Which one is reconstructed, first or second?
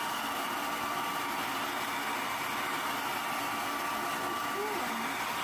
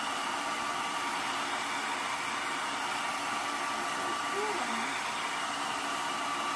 second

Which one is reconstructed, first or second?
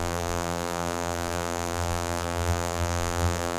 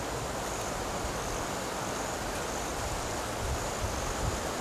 first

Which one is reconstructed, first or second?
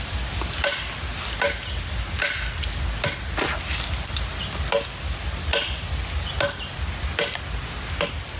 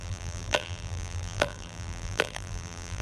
second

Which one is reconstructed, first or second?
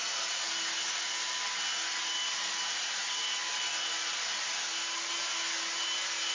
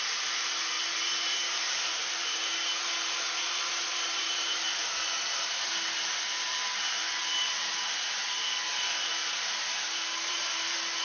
second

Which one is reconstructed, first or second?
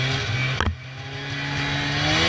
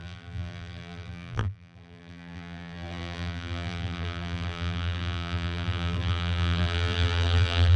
second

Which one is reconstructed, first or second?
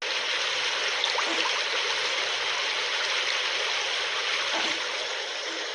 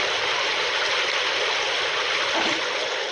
second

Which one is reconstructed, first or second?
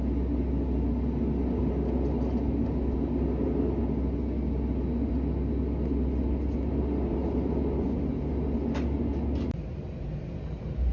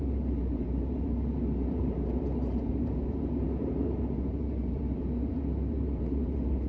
second